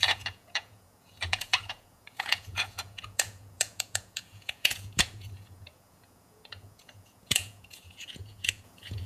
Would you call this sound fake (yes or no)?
yes